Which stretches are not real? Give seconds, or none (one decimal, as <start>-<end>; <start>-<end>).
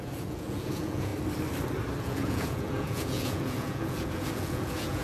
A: 0.0-1.1; 2.0-5.0